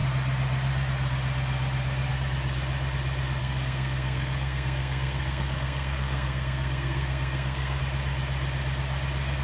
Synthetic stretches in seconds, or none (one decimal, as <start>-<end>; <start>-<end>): 3.4-7.8